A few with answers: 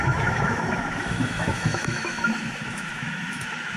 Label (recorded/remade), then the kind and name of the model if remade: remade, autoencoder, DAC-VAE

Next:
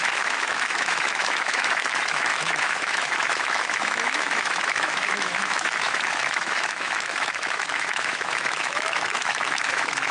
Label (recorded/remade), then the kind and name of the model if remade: remade, autoencoder, DAC-VAE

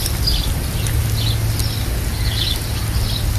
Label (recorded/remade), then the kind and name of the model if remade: recorded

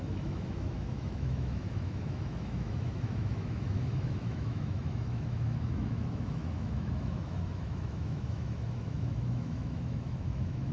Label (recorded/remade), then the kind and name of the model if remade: remade, autoencoder, DAC-VAE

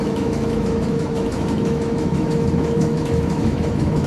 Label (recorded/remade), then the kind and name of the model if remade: remade, autoencoder, DAC-VAE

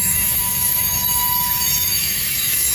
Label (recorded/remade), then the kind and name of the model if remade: remade, autoencoder, DAC-VAE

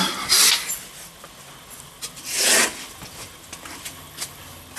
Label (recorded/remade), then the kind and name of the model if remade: recorded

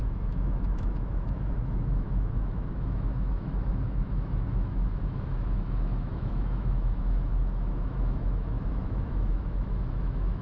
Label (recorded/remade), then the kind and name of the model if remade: remade, autoencoder, DAC-VAE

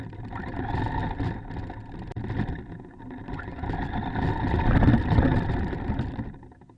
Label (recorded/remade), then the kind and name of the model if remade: recorded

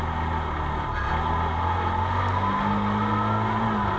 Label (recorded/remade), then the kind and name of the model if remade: recorded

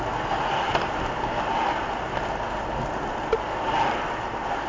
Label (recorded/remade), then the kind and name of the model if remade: recorded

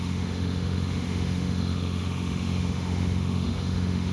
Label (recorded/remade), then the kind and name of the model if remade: remade, autoencoder, DAC-VAE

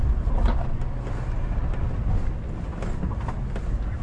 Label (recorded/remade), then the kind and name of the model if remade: recorded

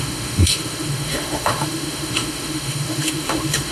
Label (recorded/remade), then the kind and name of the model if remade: remade, autoencoder, DAC-VAE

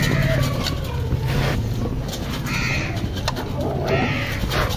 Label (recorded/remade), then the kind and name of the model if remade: recorded